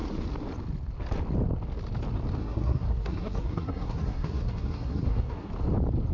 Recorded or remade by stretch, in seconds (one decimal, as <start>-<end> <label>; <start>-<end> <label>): 0.0-2.4 recorded; 2.4-5.5 remade; 5.5-6.1 recorded